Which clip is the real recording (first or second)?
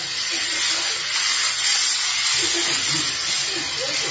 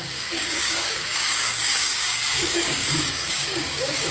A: first